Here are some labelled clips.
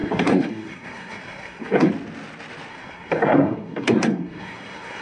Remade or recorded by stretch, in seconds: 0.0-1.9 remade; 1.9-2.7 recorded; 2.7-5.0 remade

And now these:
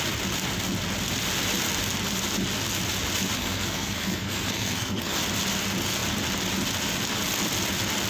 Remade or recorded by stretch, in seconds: 0.0-3.4 recorded; 3.4-5.2 remade; 5.2-8.1 recorded

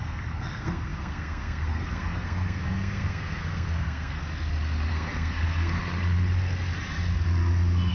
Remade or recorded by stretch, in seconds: 0.0-4.2 remade; 4.2-4.9 recorded; 4.9-5.8 remade; 5.8-7.9 recorded

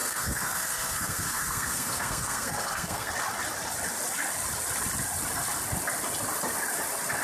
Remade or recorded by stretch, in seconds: 0.0-3.1 remade; 3.1-7.2 recorded